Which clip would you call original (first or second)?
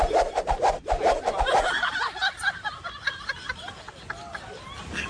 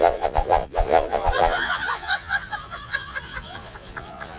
first